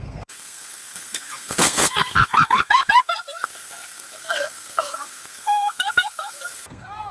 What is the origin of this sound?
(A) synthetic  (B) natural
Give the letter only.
A